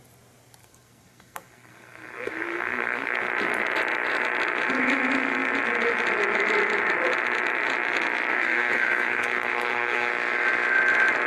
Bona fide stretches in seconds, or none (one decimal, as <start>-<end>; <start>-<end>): 0.0-0.6; 3.2-8.3; 10.1-11.3